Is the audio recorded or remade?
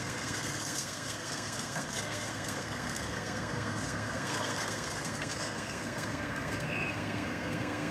remade